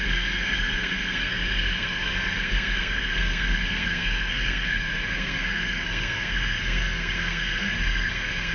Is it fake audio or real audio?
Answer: fake